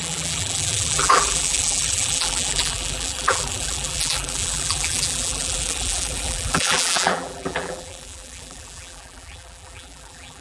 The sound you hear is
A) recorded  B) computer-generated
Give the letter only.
B